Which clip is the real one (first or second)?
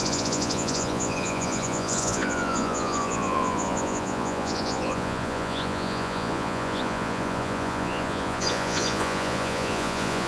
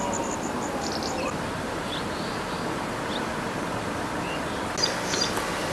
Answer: second